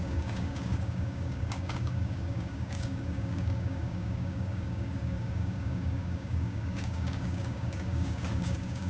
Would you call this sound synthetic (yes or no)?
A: yes